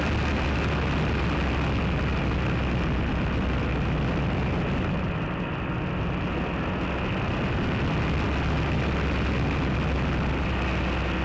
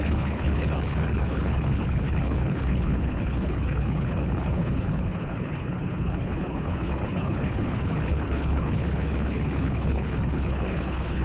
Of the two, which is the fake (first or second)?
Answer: second